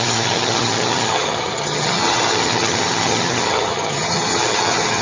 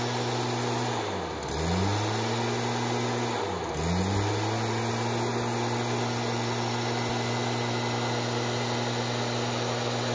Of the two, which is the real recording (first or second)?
second